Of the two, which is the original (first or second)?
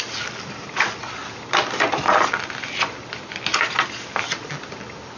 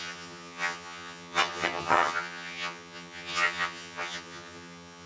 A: first